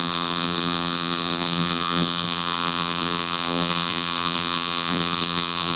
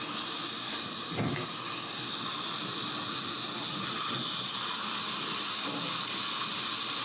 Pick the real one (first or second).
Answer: second